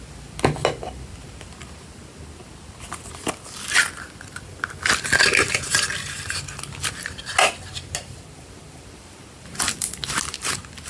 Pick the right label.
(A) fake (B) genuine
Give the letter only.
B